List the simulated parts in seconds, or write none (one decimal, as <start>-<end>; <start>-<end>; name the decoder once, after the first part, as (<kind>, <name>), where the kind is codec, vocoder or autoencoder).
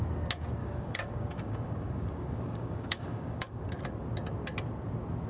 0.6-3.8 (codec, DAC)